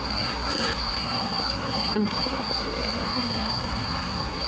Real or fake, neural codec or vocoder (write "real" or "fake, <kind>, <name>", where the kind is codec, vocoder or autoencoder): fake, codec, SNAC